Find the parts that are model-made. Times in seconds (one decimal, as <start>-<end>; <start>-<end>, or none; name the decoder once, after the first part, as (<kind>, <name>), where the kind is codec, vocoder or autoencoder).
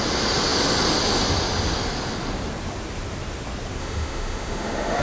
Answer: 3.8-5.0 (autoencoder, DAC-VAE)